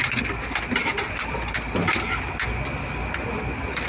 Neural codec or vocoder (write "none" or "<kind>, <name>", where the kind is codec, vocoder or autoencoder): none